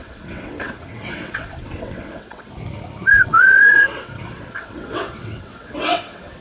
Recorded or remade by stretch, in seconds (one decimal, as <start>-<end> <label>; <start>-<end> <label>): 0.0-2.5 remade; 2.5-3.1 recorded; 3.1-6.4 remade